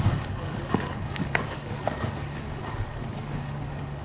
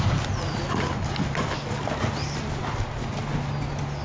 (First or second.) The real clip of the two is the second